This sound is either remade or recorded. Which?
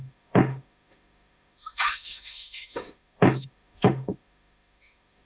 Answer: remade